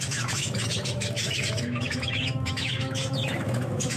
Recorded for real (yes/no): no